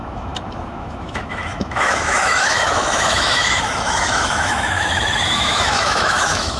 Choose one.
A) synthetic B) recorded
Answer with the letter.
A